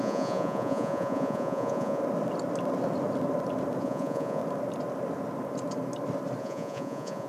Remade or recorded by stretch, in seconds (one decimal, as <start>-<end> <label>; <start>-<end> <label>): 0.0-2.0 remade; 2.0-3.8 recorded; 3.8-4.4 remade; 4.4-6.4 recorded; 6.4-7.3 remade